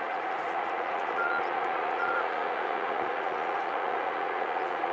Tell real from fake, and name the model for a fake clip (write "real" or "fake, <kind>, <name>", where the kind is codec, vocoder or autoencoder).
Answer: fake, vocoder, Vocos